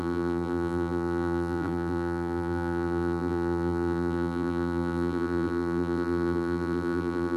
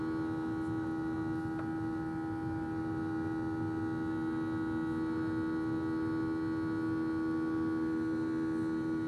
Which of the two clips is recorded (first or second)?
second